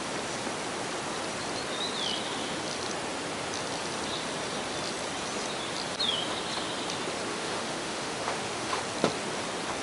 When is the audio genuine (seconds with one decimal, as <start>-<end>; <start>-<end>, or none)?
0.0-7.3; 8.8-9.8